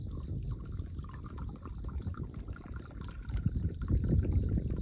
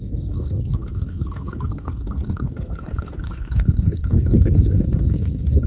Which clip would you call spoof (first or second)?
second